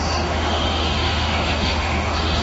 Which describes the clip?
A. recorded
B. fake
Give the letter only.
B